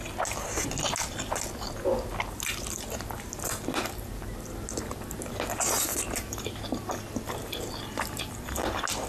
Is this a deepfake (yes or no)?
no